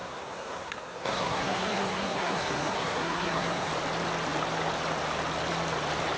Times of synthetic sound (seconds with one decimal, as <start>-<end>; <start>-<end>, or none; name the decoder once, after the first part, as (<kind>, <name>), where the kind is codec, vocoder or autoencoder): 0.0-3.7 (codec, SNAC)